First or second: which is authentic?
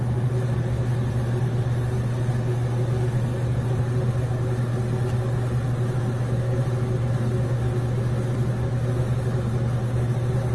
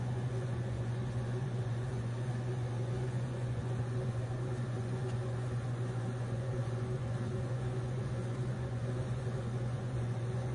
first